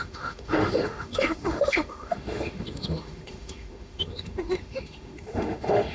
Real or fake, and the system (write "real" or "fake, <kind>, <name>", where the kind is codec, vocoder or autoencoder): fake, autoencoder, DAC-VAE